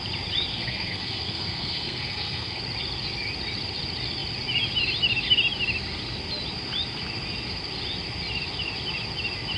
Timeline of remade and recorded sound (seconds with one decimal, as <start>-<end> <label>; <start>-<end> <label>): 0.0-0.5 recorded; 0.5-2.6 remade; 2.6-9.6 recorded